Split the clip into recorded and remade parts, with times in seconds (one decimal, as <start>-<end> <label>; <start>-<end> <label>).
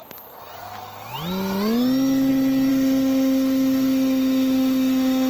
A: 0.0-2.7 recorded; 2.7-5.3 remade